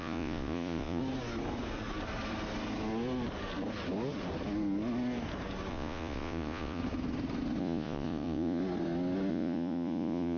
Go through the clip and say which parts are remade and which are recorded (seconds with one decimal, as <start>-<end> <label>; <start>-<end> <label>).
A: 0.0-1.0 remade; 1.0-5.7 recorded; 5.7-6.8 remade; 6.8-7.6 recorded; 7.6-8.6 remade; 8.6-9.3 recorded; 9.3-10.4 remade